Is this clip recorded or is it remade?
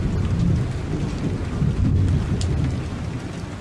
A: recorded